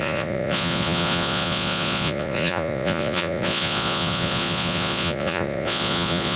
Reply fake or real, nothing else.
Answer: fake